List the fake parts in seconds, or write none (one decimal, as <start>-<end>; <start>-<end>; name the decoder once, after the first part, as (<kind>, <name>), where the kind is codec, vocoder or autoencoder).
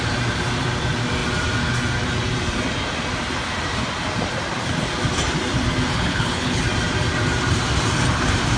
5.9-6.6 (codec, HILCodec)